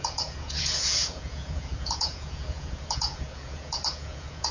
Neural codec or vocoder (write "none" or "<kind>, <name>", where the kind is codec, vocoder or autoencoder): vocoder, Vocos